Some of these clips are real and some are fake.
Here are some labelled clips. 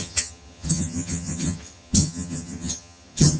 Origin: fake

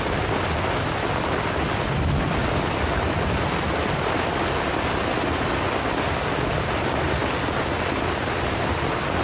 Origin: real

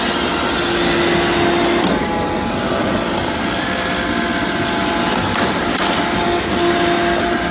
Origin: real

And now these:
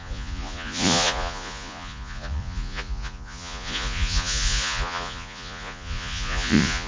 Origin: fake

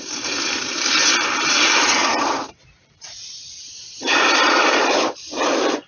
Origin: fake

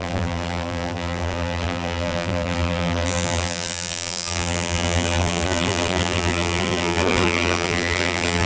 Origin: fake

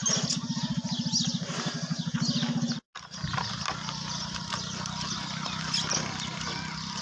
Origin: real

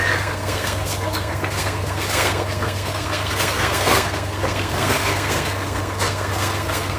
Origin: fake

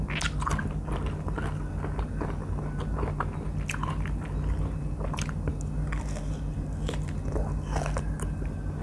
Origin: real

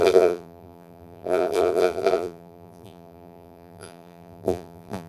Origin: fake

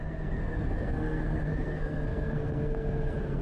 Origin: fake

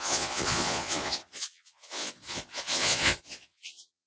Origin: fake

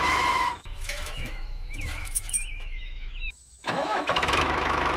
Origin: fake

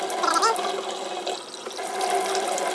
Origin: real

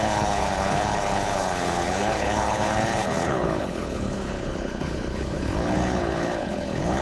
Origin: fake